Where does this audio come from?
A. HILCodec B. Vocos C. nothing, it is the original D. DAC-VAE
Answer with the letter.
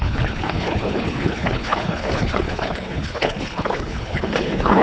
A